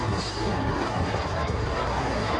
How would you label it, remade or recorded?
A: remade